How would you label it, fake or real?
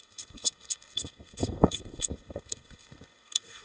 fake